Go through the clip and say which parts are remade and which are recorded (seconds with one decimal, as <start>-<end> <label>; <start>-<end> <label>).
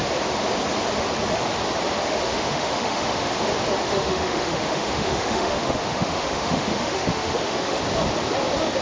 0.0-2.0 recorded; 2.0-3.3 remade; 3.3-3.8 recorded; 3.8-7.8 remade; 7.8-8.8 recorded